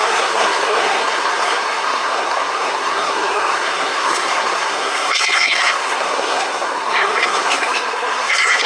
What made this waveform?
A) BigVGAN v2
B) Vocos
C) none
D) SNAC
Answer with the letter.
D